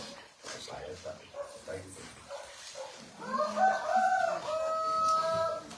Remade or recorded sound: recorded